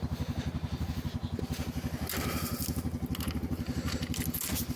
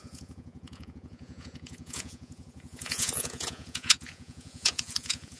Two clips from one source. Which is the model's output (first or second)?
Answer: second